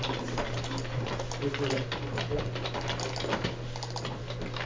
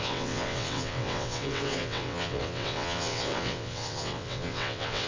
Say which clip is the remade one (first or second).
second